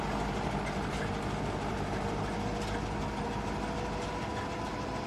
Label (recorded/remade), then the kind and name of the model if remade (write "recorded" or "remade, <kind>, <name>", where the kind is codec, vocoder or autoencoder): recorded